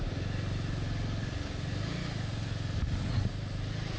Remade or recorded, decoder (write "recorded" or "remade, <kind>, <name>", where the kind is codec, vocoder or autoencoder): recorded